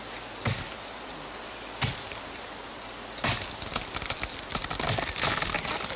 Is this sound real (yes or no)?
yes